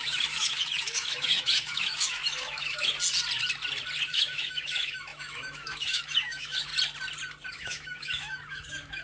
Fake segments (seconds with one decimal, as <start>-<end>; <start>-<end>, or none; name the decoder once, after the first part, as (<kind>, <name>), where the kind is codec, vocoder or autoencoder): 0.0-2.9 (autoencoder, DAC-VAE); 4.1-6.7; 7.5-9.0